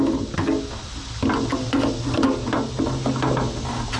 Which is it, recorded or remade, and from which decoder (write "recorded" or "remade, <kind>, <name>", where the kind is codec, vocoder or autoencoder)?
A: recorded